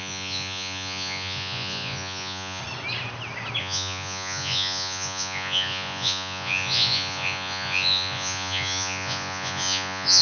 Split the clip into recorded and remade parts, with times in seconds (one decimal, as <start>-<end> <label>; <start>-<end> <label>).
0.0-2.6 remade; 2.6-3.6 recorded; 3.6-10.2 remade